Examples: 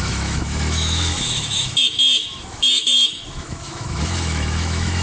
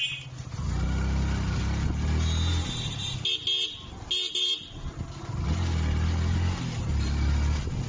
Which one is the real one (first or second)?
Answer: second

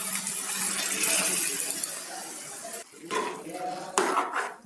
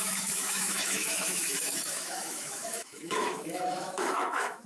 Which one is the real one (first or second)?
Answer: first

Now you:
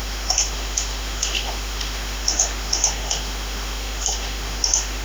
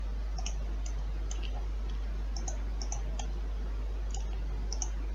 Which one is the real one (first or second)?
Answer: second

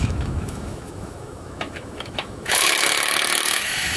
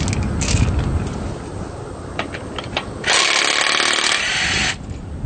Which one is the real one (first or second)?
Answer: second